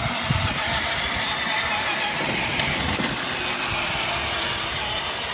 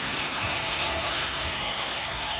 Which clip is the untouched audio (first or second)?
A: first